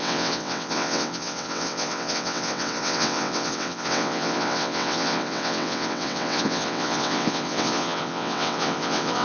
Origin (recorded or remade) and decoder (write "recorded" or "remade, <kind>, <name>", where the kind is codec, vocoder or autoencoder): remade, vocoder, WaveNeXt